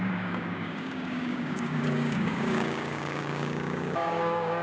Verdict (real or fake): fake